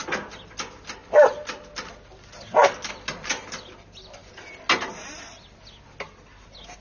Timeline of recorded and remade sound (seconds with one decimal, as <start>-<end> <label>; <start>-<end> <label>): 0.0-6.8 recorded